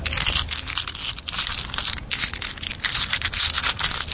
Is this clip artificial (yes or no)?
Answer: no